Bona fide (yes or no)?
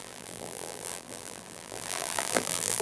no